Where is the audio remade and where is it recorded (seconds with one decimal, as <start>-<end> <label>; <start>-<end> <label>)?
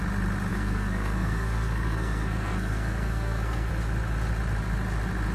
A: 0.0-0.5 recorded; 0.5-3.7 remade; 3.7-5.3 recorded